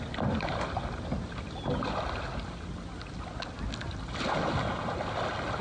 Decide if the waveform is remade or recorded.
recorded